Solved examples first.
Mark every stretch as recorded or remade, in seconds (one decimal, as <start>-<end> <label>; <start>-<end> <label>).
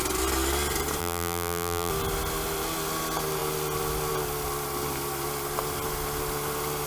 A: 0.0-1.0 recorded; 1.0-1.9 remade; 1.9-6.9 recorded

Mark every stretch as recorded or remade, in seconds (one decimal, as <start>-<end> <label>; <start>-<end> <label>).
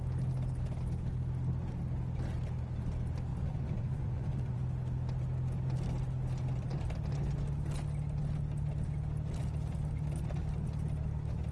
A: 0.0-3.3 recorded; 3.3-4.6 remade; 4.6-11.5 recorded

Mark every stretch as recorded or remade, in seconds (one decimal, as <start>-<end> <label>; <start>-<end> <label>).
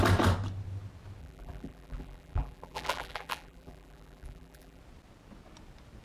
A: 0.0-1.2 recorded; 1.2-4.8 remade; 4.8-6.0 recorded